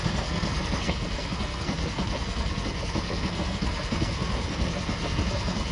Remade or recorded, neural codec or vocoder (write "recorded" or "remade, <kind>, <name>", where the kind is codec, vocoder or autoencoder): remade, codec, SNAC